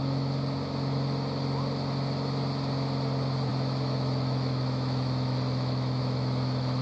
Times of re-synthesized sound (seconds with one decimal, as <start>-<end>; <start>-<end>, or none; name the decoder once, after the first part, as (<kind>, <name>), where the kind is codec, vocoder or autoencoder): 3.5-6.8 (autoencoder, DAC-VAE)